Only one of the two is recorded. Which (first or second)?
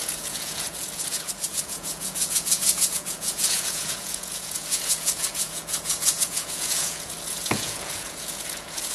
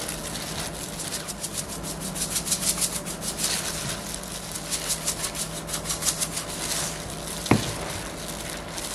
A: second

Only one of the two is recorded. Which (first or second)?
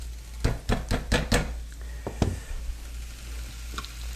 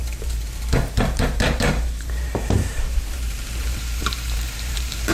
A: first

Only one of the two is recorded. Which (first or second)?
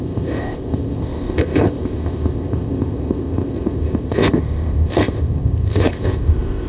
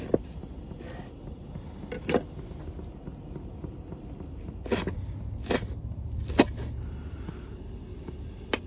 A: second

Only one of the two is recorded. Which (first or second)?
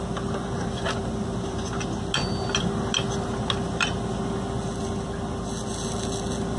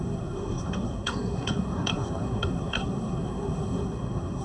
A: first